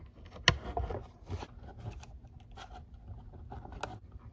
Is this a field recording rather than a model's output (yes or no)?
yes